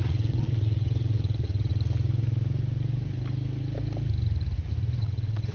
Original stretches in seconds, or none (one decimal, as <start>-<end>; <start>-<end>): 1.7-5.0